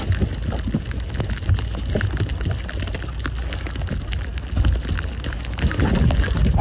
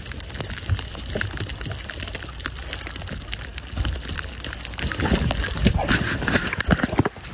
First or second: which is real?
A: first